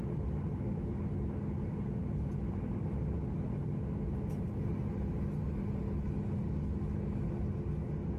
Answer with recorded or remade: recorded